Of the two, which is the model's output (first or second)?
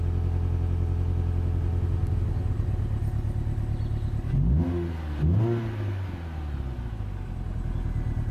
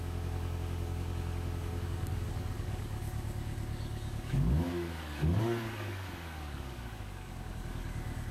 second